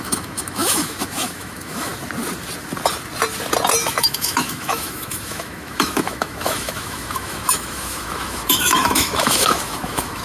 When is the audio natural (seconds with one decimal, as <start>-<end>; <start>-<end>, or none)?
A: 1.9-3.8